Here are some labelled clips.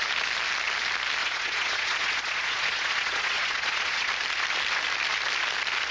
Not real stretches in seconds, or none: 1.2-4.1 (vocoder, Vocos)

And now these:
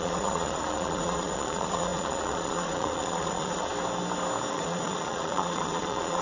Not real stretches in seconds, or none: 0.0-3.7 (vocoder, Vocos); 4.5-6.2

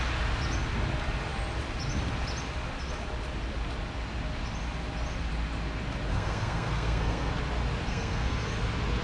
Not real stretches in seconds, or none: 6.1-7.3 (codec, SNAC); 7.9-8.5

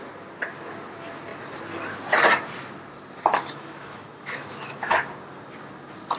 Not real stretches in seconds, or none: 3.3-5.0 (autoencoder, DAC-VAE)

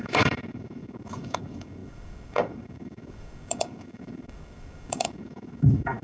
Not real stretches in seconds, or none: 0.0-6.0 (codec, DAC)

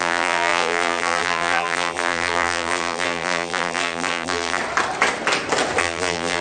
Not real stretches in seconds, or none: 0.0-4.6 (vocoder, BigVGAN v2); 5.8-6.4

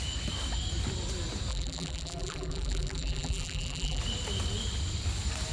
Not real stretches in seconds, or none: 1.5-4.0 (vocoder, BigVGAN v2)

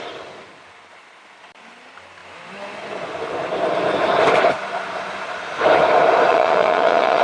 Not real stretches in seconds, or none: 6.3-7.2 (vocoder, Vocos)